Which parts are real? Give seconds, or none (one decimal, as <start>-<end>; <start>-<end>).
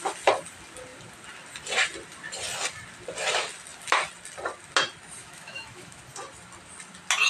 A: 0.0-5.2; 6.0-7.3